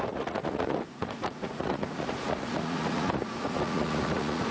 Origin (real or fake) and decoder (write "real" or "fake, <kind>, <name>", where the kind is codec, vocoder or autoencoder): fake, vocoder, Vocos